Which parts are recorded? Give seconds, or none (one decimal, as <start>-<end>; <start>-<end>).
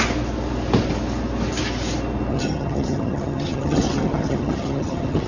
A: 0.0-2.3